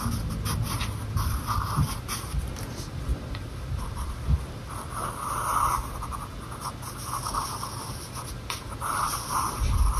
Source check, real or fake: real